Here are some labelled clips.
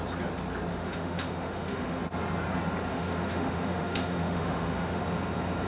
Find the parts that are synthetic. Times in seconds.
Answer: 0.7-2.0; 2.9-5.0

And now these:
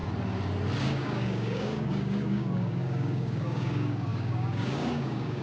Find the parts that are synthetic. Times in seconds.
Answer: 0.8-5.4

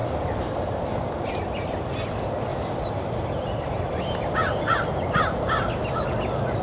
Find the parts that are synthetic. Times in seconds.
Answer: 0.0-1.6; 2.5-4.0

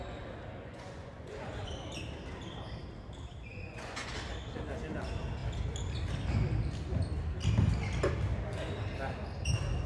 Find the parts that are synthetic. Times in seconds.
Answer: 0.5-1.7; 3.5-4.1